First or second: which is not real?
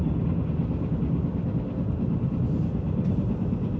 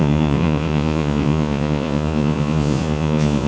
second